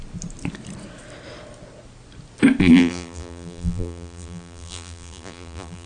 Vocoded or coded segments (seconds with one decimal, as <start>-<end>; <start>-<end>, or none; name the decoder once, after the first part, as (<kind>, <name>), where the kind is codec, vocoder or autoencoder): 2.6-5.9 (vocoder, BigVGAN v2)